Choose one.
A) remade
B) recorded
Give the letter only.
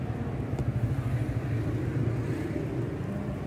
B